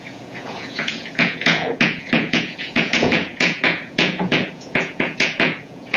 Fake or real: fake